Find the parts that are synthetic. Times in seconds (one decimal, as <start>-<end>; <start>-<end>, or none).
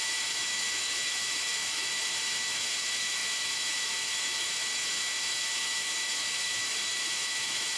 0.0-7.8